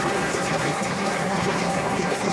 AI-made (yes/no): yes